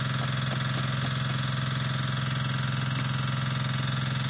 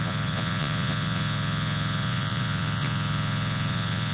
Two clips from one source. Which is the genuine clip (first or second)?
first